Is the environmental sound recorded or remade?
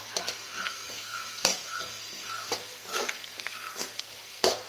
remade